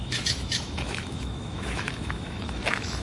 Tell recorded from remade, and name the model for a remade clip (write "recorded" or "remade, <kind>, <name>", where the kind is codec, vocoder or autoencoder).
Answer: remade, autoencoder, DAC-VAE